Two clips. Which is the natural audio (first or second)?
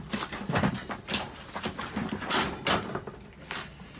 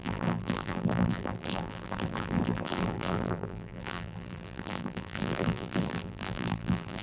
first